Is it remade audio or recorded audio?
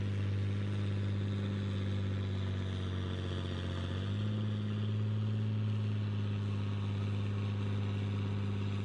recorded